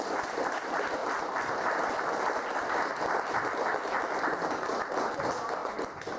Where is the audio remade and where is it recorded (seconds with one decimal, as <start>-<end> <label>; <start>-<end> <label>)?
0.0-1.0 recorded; 1.0-2.7 remade; 2.7-5.6 recorded; 5.6-6.2 remade